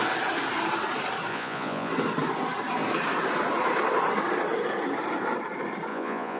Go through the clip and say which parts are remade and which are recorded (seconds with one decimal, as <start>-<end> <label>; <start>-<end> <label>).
0.0-1.3 recorded; 1.3-1.9 remade; 1.9-5.9 recorded; 5.9-6.4 remade